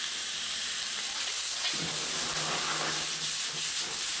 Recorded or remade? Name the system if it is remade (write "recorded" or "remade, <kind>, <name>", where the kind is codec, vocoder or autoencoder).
recorded